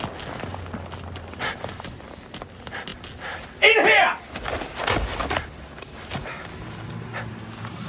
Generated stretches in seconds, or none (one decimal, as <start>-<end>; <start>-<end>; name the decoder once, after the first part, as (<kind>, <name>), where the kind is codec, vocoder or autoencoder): none